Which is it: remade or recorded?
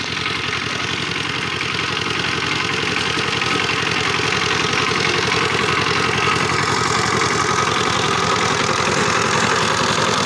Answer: recorded